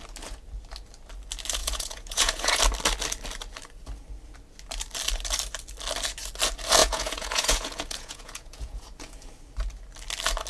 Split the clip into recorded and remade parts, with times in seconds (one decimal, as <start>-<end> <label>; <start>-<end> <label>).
0.0-1.6 recorded; 1.6-2.6 remade; 2.6-6.8 recorded; 6.8-8.8 remade; 8.8-10.5 recorded